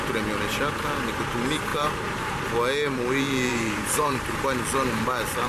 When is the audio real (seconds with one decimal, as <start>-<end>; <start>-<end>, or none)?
0.0-1.7; 2.4-3.5; 4.3-5.5